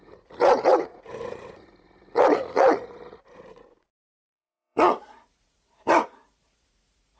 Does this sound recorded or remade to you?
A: remade